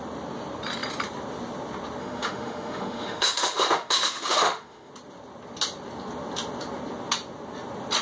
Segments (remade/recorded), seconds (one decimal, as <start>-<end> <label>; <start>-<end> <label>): 0.0-2.0 recorded; 2.0-4.9 remade; 4.9-8.0 recorded